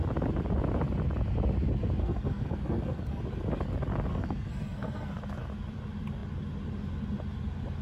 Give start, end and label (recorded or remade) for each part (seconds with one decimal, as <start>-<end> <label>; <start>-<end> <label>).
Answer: 0.0-2.0 recorded; 2.0-3.2 remade; 3.2-4.1 recorded; 4.1-5.1 remade; 5.1-7.8 recorded